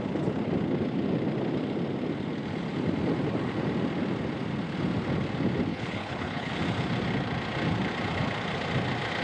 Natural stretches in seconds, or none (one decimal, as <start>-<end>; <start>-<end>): 0.0-5.7; 6.5-9.2